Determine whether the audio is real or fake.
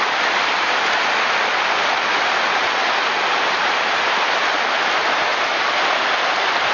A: real